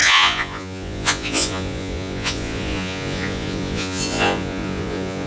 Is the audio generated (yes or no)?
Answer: yes